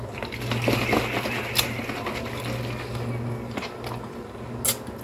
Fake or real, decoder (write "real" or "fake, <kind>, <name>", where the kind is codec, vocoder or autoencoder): real